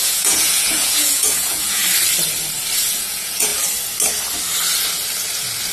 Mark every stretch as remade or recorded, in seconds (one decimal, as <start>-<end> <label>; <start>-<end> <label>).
0.0-1.8 remade; 1.8-2.8 recorded; 2.8-3.5 remade; 3.5-5.7 recorded